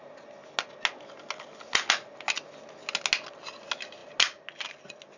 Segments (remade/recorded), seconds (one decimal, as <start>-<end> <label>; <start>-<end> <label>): 0.0-5.2 recorded